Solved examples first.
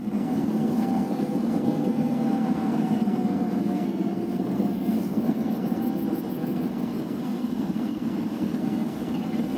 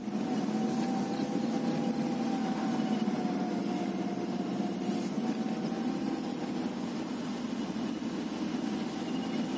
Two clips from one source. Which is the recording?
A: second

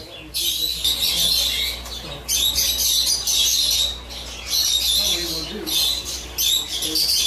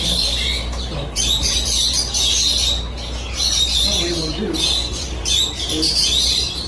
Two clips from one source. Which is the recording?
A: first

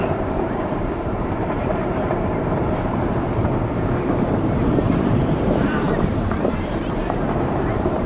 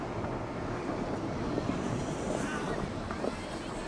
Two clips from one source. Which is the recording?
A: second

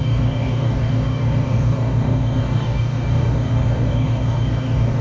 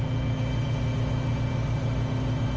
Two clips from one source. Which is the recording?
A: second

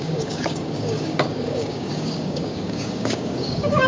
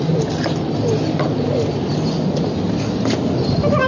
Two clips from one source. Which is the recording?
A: second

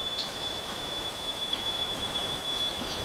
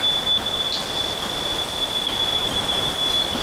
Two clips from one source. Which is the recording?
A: second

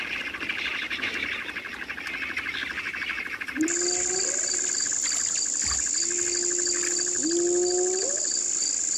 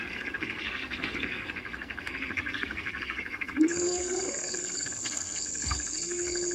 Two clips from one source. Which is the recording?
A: first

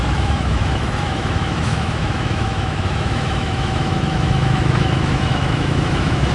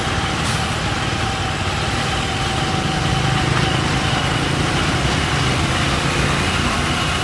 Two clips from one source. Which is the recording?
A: second